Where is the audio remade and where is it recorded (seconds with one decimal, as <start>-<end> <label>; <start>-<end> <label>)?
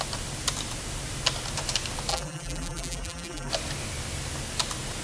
0.0-2.1 recorded; 2.1-3.5 remade; 3.5-5.0 recorded